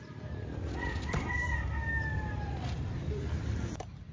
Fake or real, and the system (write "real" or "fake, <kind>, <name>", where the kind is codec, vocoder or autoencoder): real